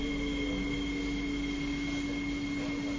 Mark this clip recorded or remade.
recorded